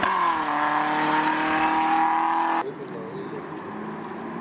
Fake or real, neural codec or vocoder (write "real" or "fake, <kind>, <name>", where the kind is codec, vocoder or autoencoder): real